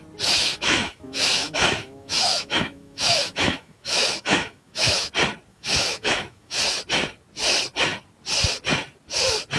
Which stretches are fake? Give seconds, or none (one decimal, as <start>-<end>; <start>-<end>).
0.4-5.1; 5.5-6.6